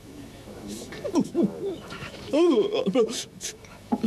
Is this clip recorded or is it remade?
remade